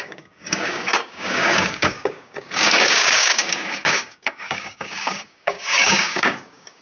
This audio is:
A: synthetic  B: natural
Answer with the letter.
A